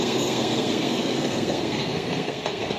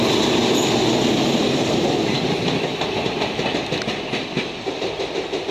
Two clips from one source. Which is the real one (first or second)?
second